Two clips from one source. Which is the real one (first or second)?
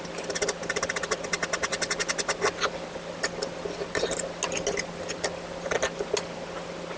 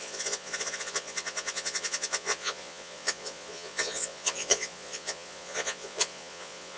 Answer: first